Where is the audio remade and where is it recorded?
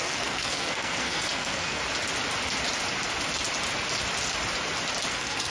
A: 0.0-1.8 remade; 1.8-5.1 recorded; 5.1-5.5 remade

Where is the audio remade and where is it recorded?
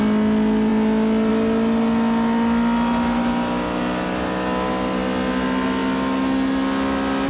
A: 0.0-7.3 recorded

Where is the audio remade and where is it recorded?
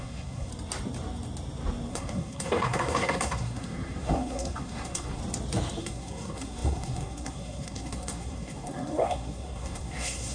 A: 0.0-0.5 remade; 0.5-1.9 recorded; 1.9-5.2 remade; 5.2-5.8 recorded; 5.8-10.3 remade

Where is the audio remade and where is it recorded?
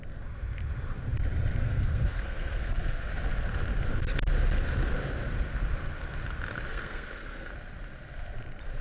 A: 0.0-1.6 recorded; 1.6-3.1 remade; 3.1-6.7 recorded; 6.7-7.5 remade; 7.5-8.8 recorded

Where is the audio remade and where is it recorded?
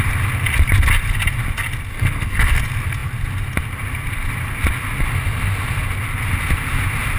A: 0.0-1.9 recorded; 1.9-2.6 remade; 2.6-7.2 recorded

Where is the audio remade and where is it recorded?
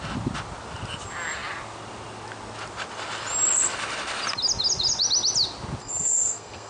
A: 0.0-5.8 recorded; 5.8-6.7 remade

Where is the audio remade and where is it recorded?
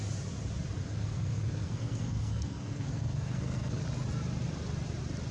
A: 0.0-0.8 recorded; 0.8-3.8 remade; 3.8-5.3 recorded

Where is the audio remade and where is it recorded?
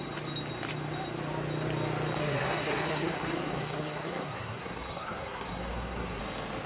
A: 0.0-2.2 recorded; 2.2-6.2 remade; 6.2-6.7 recorded